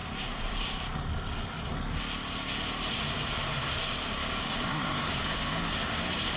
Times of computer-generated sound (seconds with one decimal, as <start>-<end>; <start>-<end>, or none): 4.2-5.7